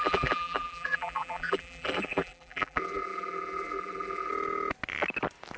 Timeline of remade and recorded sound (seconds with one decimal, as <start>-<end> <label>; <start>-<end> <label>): 0.0-4.3 remade; 4.3-5.6 recorded